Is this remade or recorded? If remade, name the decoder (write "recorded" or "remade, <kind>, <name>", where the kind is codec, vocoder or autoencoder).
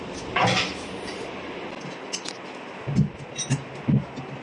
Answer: recorded